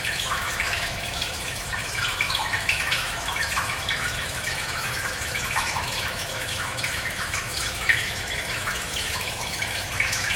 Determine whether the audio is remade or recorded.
remade